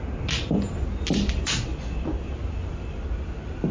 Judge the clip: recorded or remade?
recorded